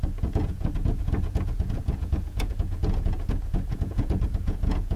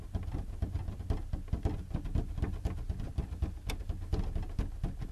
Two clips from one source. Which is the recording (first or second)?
second